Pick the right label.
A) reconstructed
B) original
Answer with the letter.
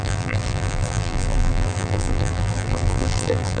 A